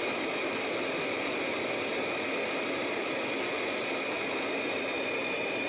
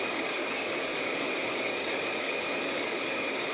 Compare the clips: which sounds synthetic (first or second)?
second